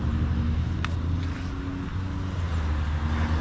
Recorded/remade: recorded